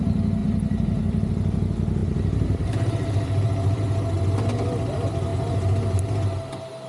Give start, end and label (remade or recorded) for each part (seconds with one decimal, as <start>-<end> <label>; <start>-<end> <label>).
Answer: 0.0-0.4 recorded; 0.4-1.3 remade; 1.3-2.0 recorded; 2.0-3.8 remade; 3.8-6.9 recorded